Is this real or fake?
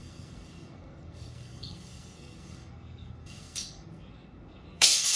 fake